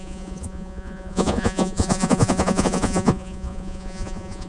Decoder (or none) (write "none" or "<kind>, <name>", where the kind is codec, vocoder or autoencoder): vocoder, Vocos